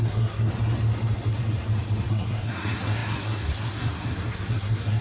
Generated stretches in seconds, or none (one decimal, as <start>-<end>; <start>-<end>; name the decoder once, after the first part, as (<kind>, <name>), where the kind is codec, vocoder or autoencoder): 0.0-0.5 (codec, SNAC); 2.1-5.0